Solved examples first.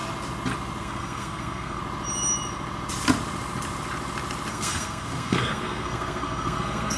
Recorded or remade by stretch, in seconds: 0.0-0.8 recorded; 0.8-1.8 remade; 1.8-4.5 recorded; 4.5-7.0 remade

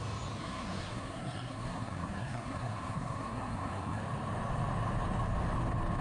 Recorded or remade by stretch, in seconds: 0.0-0.4 recorded; 0.4-4.0 remade; 4.0-6.0 recorded

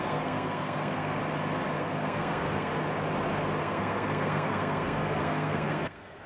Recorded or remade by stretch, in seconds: 0.0-1.2 remade; 1.2-1.8 recorded; 1.8-2.7 remade; 2.7-3.6 recorded; 3.6-6.3 remade

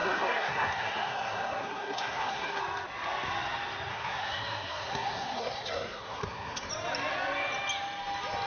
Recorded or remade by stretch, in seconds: 0.0-2.6 remade; 2.6-3.9 recorded; 3.9-6.7 remade; 6.7-8.5 recorded

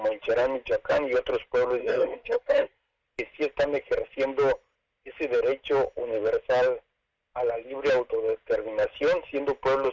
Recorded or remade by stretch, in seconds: 0.0-1.8 recorded; 1.8-3.0 remade; 3.0-9.9 recorded

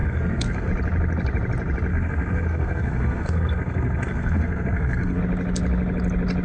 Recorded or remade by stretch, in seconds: 0.0-0.7 remade; 0.7-1.9 recorded; 1.9-5.2 remade; 5.2-6.4 recorded

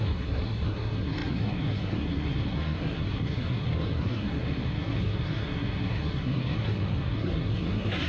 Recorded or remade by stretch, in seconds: 0.0-8.1 remade